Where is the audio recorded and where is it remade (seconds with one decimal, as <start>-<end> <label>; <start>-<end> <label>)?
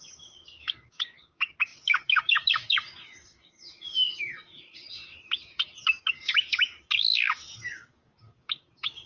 0.0-9.1 remade